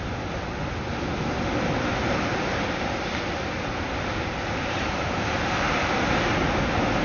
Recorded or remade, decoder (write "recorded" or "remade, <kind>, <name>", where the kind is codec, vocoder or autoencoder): recorded